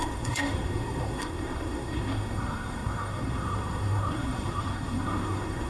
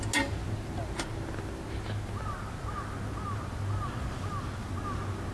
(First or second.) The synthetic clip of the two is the first